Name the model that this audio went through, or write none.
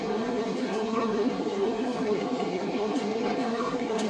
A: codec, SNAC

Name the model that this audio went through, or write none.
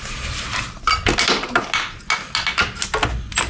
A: none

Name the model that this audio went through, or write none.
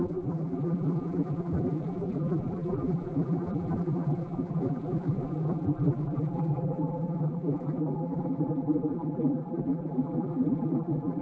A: vocoder, BigVGAN v2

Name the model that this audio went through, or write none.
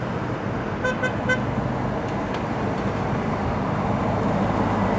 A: none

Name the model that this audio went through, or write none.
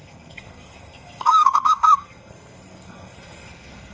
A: codec, SNAC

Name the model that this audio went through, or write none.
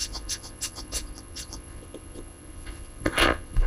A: vocoder, Vocos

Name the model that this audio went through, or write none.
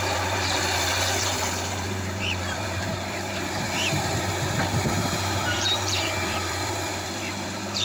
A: vocoder, BigVGAN v2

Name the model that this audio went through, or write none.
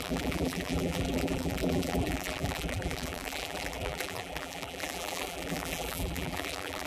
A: vocoder, BigVGAN v2